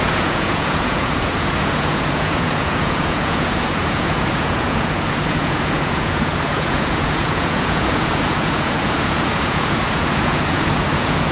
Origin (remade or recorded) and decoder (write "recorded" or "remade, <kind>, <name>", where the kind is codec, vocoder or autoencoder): remade, vocoder, Vocos